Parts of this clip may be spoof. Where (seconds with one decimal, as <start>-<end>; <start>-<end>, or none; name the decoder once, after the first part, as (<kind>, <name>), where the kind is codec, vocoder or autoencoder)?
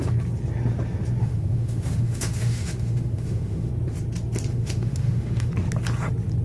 1.2-3.7 (autoencoder, DAC-VAE); 4.5-5.5